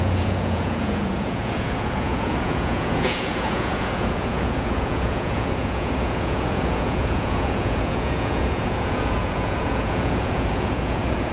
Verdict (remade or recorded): remade